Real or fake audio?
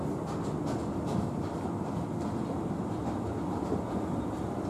real